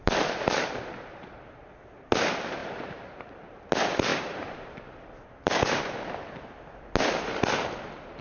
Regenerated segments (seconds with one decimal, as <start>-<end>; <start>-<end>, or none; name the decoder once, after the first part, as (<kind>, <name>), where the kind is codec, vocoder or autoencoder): 0.0-1.6 (vocoder, BigVGAN v2); 2.6-3.6; 4.1-5.8